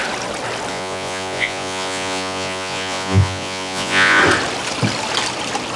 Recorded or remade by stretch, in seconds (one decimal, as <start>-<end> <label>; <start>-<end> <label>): 0.0-0.7 recorded; 0.7-4.2 remade; 4.2-5.8 recorded